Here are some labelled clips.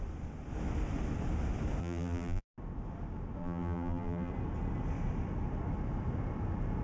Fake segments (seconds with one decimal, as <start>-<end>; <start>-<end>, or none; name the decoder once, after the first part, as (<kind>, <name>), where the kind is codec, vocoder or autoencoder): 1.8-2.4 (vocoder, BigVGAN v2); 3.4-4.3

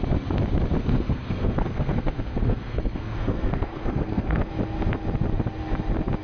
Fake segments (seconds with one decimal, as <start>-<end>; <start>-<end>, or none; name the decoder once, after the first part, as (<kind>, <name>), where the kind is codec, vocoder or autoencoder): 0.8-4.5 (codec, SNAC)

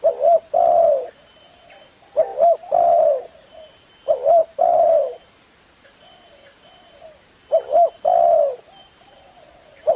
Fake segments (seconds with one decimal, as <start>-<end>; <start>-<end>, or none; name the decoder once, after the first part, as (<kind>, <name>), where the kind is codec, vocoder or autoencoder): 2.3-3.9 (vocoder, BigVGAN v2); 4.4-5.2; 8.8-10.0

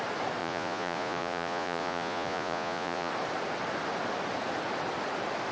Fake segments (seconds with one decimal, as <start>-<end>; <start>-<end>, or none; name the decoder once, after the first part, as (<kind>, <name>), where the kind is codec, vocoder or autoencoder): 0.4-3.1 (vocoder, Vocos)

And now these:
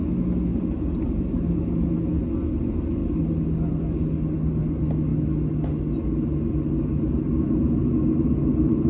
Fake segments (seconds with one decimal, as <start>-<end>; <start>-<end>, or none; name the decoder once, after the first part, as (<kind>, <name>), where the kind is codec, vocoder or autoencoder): 0.5-1.5 (vocoder, BigVGAN v2)

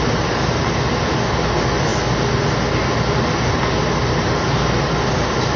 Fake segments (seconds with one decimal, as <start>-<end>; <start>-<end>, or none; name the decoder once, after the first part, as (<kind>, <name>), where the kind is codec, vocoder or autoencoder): none

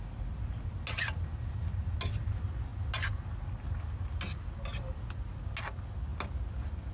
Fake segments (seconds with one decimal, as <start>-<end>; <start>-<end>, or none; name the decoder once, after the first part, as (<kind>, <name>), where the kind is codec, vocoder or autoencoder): none